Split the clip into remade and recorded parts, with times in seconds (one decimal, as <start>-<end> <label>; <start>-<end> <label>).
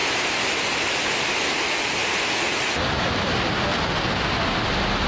0.0-5.1 recorded